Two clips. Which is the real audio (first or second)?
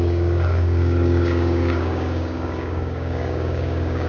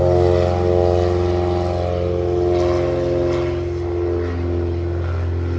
second